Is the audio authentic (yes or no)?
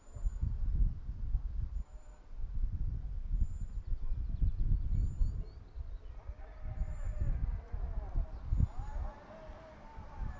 yes